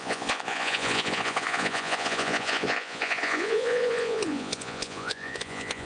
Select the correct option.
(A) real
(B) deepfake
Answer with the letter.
B